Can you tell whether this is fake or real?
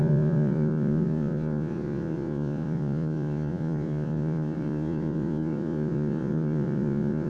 fake